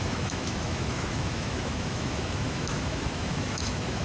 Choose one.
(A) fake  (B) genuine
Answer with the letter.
A